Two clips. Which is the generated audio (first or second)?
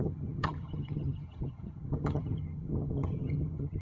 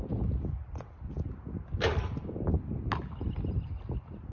first